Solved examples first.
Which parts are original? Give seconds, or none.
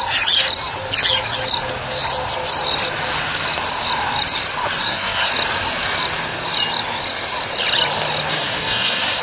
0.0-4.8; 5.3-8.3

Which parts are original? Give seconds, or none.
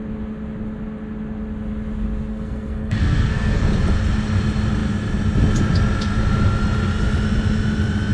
0.0-2.3; 3.6-8.1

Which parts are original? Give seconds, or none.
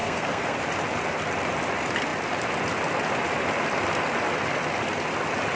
0.6-5.6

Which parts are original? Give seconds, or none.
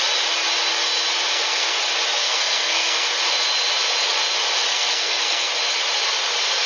0.0-1.3; 1.8-2.2; 3.1-4.7; 5.5-6.7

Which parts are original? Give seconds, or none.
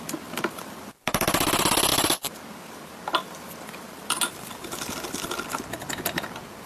0.0-6.7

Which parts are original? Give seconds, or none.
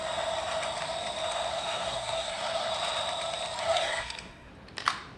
0.0-1.5; 2.7-3.6; 4.5-5.2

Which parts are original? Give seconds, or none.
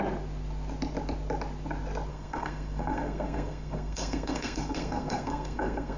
0.0-2.1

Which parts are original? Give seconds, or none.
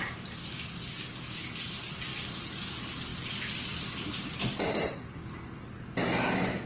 0.0-6.7